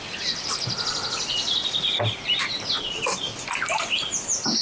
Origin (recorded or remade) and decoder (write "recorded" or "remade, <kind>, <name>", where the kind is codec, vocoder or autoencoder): recorded